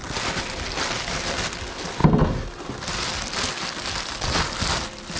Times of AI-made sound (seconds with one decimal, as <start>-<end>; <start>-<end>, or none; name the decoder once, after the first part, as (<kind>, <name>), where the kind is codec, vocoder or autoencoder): none